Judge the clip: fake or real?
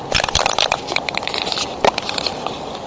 real